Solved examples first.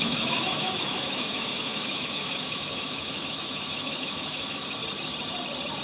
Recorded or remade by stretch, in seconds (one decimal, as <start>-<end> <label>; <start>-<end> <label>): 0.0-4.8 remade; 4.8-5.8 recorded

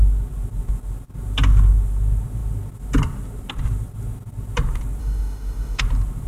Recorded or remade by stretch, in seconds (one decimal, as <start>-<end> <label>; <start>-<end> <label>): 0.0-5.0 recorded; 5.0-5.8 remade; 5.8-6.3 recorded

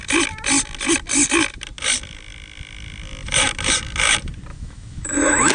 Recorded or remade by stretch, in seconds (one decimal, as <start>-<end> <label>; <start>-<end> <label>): 0.0-4.5 recorded; 4.5-5.5 remade

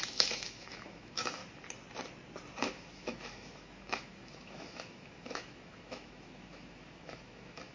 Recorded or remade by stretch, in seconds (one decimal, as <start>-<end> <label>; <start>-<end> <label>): 0.0-1.4 remade; 1.4-2.6 recorded; 2.6-7.7 remade

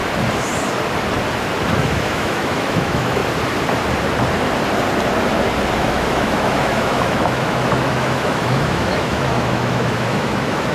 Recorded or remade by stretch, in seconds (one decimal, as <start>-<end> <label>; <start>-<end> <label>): 0.0-1.6 recorded; 1.6-3.2 remade; 3.2-5.8 recorded; 5.8-10.7 remade

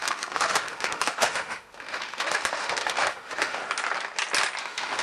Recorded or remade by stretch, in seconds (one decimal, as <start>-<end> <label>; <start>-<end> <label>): 0.0-3.6 remade; 3.6-4.6 recorded; 4.6-5.0 remade

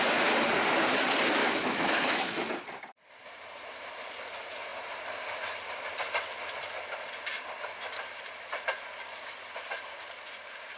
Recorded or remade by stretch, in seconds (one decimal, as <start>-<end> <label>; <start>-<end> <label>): 0.0-1.4 recorded; 1.4-2.5 remade; 2.5-10.8 recorded

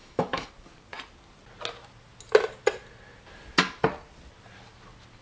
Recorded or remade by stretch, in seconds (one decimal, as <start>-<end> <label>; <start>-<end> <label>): 0.0-0.5 remade; 0.5-5.2 recorded